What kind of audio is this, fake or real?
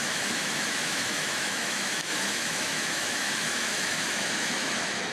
fake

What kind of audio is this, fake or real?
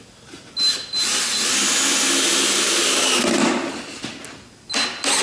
real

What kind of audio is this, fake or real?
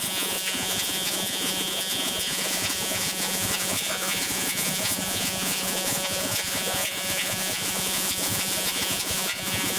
fake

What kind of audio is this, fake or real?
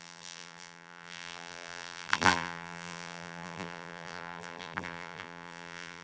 fake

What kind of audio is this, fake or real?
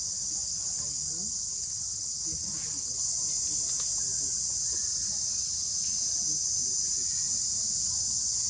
real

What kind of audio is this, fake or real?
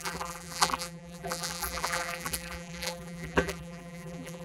fake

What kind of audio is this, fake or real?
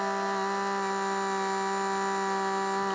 real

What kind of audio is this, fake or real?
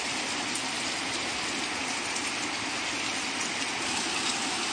real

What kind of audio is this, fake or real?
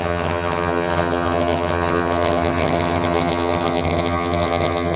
fake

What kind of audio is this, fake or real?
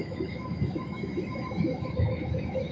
fake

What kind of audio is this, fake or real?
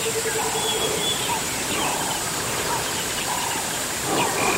real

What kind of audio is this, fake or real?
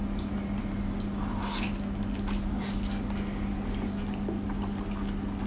real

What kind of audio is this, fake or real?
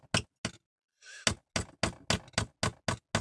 real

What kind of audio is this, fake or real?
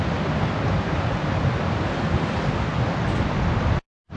real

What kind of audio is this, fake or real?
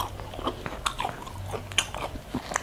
real